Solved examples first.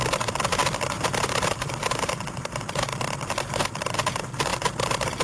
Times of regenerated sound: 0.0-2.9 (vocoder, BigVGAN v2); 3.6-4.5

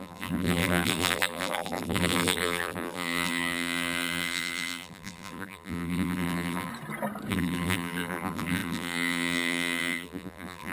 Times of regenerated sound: 0.0-6.7 (vocoder, BigVGAN v2); 7.3-10.7

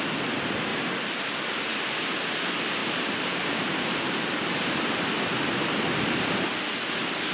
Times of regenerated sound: 0.7-1.4 (vocoder, BigVGAN v2); 2.8-4.8

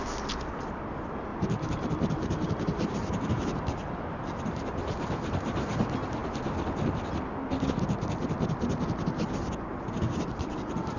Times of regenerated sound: 1.3-5.8 (vocoder, BigVGAN v2)